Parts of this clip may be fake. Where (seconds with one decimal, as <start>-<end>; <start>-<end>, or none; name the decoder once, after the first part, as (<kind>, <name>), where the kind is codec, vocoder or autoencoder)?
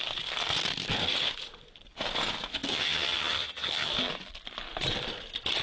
2.7-3.9 (vocoder, HiFi-GAN)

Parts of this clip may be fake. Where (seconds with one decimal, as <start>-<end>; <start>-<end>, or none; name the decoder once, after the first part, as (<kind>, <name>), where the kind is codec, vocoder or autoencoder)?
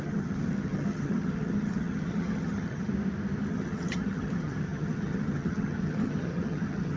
0.0-2.9 (vocoder, HiFi-GAN); 3.5-7.0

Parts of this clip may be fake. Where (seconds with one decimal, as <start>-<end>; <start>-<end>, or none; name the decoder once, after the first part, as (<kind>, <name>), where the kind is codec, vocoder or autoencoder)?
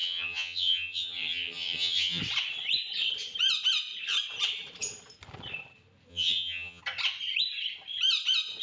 0.0-2.2 (vocoder, HiFi-GAN); 6.1-6.8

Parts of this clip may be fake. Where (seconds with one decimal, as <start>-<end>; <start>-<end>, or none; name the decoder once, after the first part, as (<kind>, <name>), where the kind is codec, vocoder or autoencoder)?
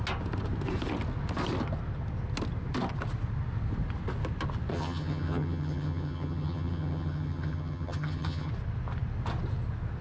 4.7-8.5 (vocoder, HiFi-GAN)